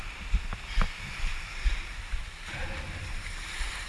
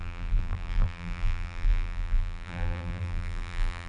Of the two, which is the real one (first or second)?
first